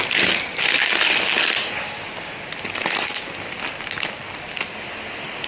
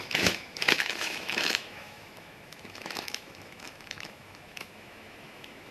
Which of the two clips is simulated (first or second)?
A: second